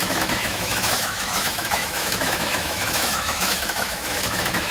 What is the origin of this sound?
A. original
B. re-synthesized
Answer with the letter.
B